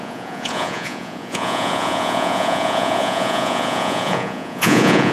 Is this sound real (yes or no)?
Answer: no